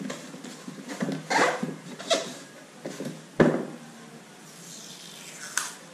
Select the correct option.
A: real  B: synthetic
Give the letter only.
A